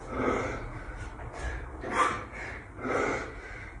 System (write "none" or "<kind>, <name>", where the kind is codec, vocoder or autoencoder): none